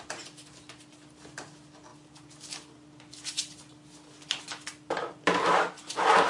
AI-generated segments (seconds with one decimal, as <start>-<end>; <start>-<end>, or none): none